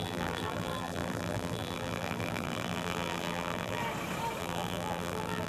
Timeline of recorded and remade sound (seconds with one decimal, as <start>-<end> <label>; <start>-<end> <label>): 0.0-3.8 remade; 3.8-4.4 recorded; 4.4-5.5 remade